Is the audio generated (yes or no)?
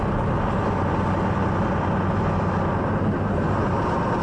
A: no